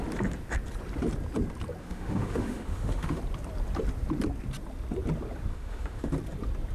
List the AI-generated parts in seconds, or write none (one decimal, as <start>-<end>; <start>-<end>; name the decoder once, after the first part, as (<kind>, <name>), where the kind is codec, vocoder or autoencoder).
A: 1.8-3.2 (autoencoder, DAC-VAE); 5.5-6.1